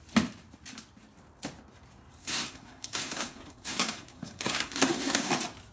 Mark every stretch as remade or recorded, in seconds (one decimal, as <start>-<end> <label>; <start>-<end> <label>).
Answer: 0.0-2.2 recorded; 2.2-5.3 remade; 5.3-5.7 recorded